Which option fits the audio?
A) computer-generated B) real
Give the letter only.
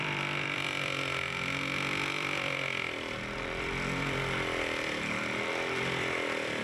A